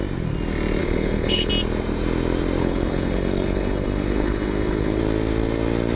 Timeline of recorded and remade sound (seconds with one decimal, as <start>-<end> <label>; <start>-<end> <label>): 0.0-0.8 recorded; 0.8-1.5 remade; 1.5-2.6 recorded; 2.6-5.0 remade; 5.0-6.0 recorded

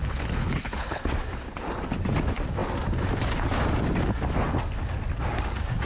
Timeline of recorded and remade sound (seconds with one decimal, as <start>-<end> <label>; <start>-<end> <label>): 0.0-1.0 remade; 1.0-5.9 recorded